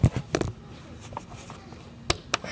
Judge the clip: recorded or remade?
recorded